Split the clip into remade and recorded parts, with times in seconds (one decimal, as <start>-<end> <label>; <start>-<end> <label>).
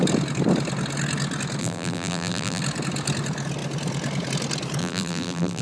0.0-1.6 recorded; 1.6-2.6 remade; 2.6-4.8 recorded; 4.8-5.6 remade